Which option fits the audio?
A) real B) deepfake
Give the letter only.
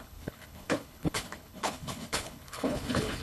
B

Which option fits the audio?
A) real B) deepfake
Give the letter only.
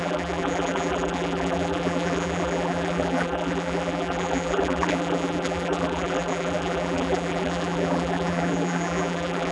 B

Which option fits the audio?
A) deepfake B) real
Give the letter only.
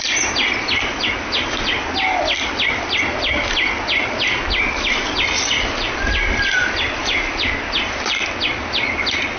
B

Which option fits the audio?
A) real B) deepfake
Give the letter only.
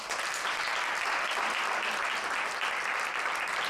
A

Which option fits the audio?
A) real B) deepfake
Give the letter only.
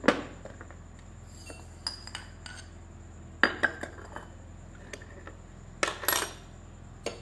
A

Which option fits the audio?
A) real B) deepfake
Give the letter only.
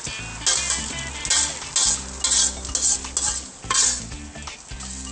A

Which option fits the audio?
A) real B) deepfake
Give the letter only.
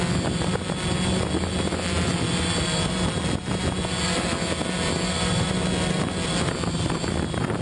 A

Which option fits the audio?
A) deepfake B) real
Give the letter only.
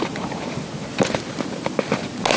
B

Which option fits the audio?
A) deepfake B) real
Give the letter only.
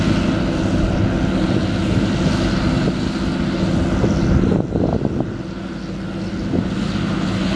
B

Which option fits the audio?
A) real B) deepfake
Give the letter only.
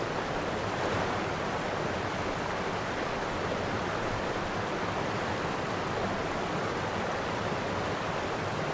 A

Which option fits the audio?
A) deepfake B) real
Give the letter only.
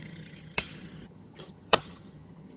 A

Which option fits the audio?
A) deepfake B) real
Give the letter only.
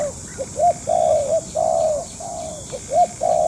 B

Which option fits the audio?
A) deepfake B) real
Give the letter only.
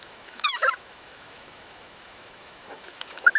A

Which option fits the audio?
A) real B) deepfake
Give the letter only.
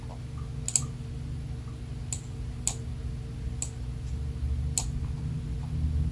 A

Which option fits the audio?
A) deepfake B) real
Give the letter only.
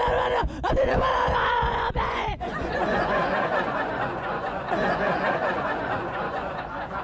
A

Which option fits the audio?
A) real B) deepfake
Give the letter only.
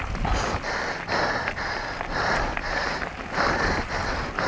A